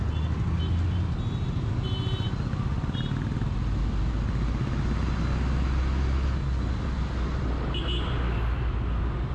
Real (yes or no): yes